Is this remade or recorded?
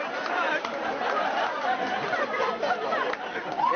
recorded